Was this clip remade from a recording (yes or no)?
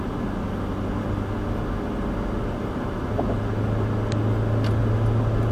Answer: no